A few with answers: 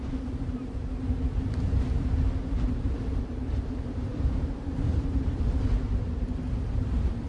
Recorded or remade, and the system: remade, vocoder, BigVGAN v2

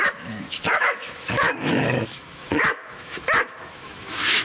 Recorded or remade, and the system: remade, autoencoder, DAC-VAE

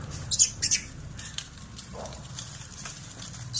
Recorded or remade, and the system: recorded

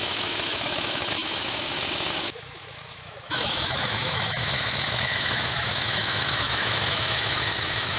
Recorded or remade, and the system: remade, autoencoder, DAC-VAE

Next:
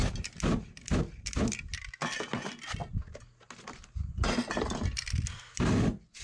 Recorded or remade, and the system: recorded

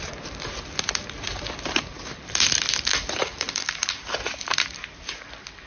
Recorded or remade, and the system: remade, vocoder, BigVGAN v2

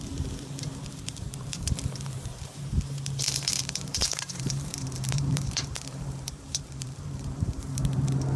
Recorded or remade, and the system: remade, vocoder, BigVGAN v2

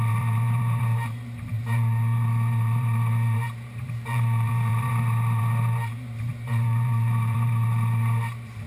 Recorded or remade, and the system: remade, vocoder, BigVGAN v2